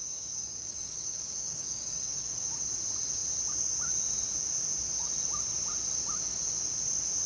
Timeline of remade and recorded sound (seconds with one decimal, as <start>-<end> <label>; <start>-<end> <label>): 0.0-2.5 remade; 2.5-7.3 recorded